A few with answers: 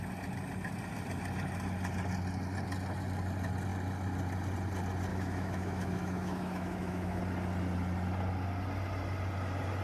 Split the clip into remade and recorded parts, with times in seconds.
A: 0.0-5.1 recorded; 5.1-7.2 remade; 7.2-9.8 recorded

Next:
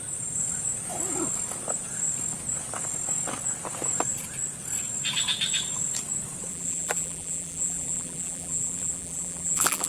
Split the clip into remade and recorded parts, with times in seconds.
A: 0.0-6.5 recorded; 6.5-9.9 remade